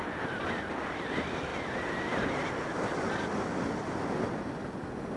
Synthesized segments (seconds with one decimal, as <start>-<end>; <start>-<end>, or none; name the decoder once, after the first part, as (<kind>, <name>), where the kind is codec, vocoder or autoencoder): none